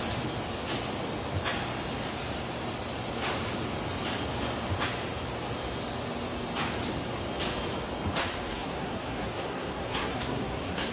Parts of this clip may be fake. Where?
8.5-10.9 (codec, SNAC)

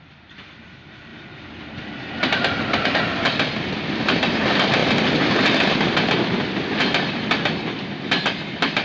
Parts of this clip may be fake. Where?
0.0-4.8 (vocoder, BigVGAN v2); 8.1-8.8

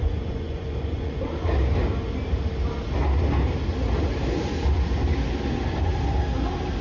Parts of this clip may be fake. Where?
0.0-1.3 (vocoder, Vocos)

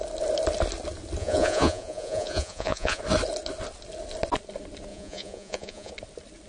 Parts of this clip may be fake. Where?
1.2-3.0 (vocoder, Vocos); 4.9-5.9